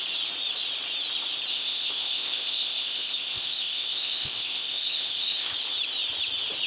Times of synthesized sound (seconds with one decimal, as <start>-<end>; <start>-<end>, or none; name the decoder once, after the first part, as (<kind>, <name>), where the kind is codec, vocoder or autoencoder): 1.5-5.5 (codec, ZipCodec)